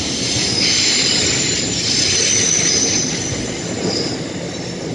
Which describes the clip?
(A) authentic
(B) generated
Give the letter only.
A